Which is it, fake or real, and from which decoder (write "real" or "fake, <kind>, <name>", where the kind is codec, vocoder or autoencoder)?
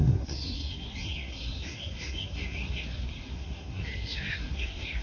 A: fake, codec, SNAC